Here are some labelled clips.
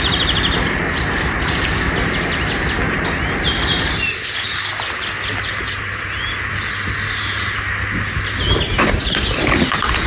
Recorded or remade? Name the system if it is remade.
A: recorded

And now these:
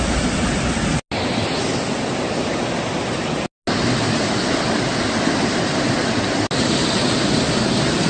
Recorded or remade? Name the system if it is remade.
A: recorded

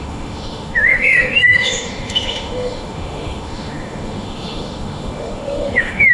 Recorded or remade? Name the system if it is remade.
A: remade, autoencoder, DAC-VAE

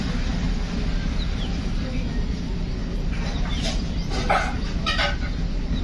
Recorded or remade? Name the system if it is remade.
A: recorded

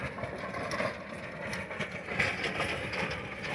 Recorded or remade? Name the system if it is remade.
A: recorded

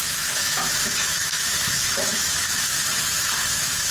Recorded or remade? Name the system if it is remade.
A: remade, autoencoder, DAC-VAE